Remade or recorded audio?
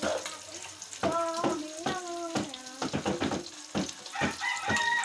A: recorded